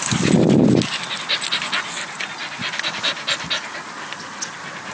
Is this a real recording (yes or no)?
yes